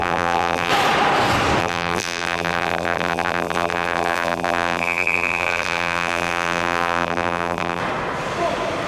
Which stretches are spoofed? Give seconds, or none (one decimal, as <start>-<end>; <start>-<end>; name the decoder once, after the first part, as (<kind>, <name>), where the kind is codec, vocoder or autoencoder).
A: 0.0-0.7 (vocoder, BigVGAN v2); 1.6-7.8